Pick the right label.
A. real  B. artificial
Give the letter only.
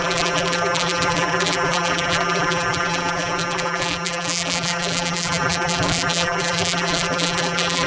B